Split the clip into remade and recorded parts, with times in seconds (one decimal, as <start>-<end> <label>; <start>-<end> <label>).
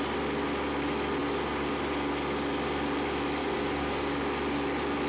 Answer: 0.0-3.4 recorded; 3.4-4.2 remade; 4.2-5.1 recorded